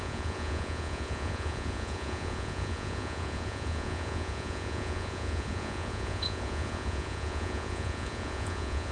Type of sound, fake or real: fake